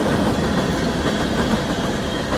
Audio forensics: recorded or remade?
recorded